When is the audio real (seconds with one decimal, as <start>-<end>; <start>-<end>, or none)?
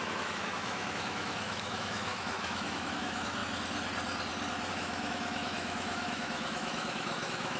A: 3.4-4.7